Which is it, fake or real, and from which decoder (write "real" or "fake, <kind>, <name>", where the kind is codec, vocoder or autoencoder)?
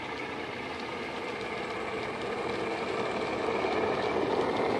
real